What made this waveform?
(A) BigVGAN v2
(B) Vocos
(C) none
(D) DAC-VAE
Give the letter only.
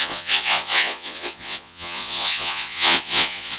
B